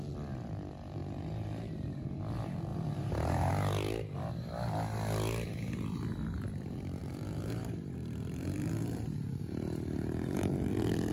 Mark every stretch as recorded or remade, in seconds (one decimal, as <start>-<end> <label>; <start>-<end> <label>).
0.0-1.0 recorded; 1.0-2.1 remade; 2.1-2.7 recorded; 2.7-3.5 remade; 3.5-7.0 recorded; 7.0-10.7 remade; 10.7-11.1 recorded